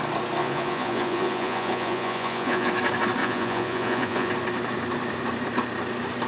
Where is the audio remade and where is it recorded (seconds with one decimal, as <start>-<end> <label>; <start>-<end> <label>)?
0.0-0.4 recorded; 0.4-2.7 remade; 2.7-3.2 recorded; 3.2-4.3 remade; 4.3-6.3 recorded